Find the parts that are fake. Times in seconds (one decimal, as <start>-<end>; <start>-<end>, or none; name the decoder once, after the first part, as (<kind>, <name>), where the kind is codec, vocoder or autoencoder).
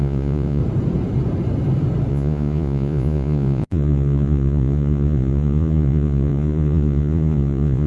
0.0-0.6 (vocoder, Vocos); 2.1-7.9